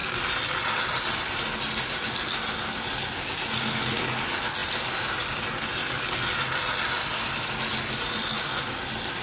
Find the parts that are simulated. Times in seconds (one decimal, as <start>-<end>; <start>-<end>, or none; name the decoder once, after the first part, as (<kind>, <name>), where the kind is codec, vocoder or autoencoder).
none